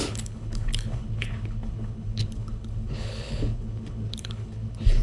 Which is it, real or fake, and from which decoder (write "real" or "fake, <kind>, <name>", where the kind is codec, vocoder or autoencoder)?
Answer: fake, codec, HILCodec